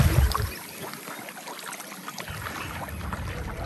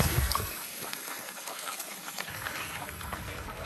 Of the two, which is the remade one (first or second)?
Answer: second